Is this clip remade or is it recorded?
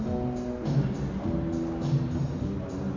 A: recorded